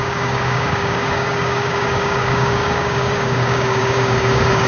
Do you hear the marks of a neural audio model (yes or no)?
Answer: yes